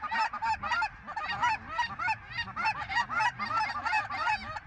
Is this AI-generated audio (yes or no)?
no